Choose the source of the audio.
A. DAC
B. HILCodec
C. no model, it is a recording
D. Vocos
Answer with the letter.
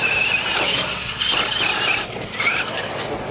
C